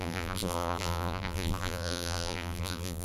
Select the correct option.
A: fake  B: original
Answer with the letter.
A